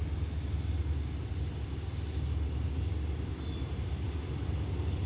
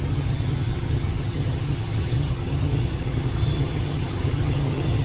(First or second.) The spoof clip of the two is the second